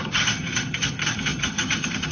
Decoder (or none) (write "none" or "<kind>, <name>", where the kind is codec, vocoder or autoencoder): vocoder, HiFi-GAN